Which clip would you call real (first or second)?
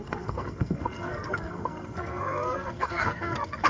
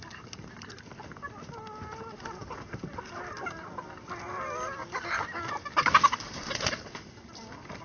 second